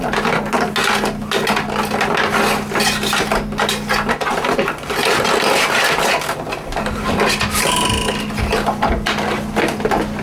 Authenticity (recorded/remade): recorded